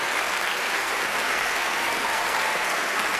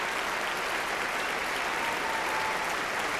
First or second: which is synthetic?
first